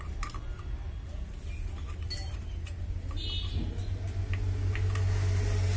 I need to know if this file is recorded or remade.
recorded